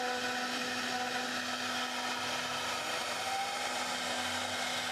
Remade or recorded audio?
recorded